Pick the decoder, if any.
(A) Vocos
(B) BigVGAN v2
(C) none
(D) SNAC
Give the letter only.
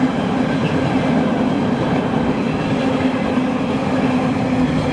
C